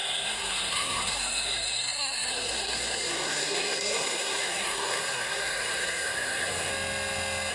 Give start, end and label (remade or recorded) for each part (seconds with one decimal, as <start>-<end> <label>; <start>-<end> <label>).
0.0-6.7 remade; 6.7-7.5 recorded